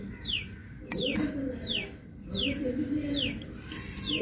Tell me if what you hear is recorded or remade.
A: recorded